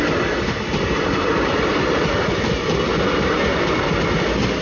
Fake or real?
real